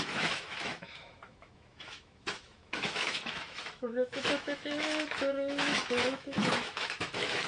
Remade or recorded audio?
remade